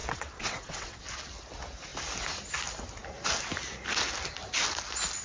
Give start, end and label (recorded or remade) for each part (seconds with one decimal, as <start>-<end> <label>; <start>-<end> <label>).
0.0-1.0 remade; 1.0-5.2 recorded